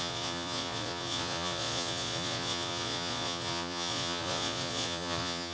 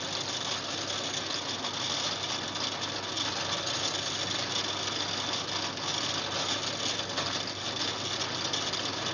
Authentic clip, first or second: second